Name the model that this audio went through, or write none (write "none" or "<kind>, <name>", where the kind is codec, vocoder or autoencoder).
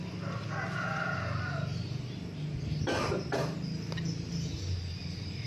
none